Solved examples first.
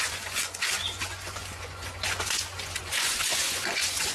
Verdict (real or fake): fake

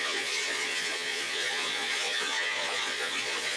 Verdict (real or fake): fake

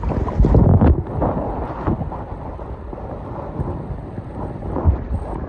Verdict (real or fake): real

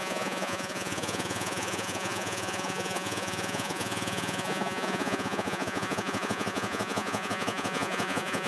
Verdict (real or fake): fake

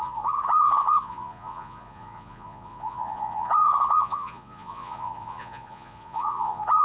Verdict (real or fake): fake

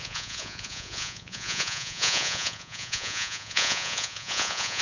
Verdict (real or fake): fake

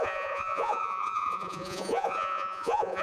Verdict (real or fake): fake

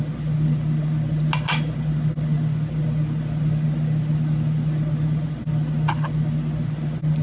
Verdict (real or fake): real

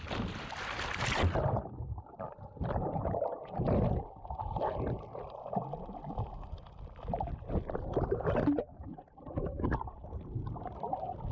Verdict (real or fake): real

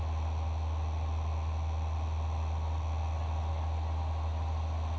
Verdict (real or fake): real